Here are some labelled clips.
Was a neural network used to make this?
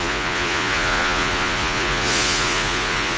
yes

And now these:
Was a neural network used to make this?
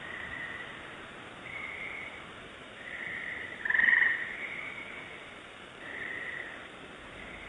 yes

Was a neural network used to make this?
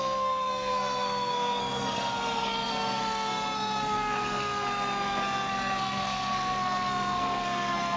yes